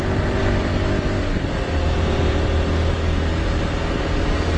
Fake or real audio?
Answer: real